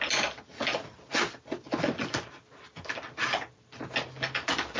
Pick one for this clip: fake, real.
real